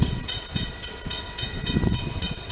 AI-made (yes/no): yes